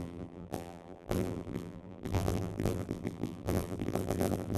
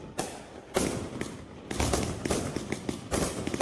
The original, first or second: second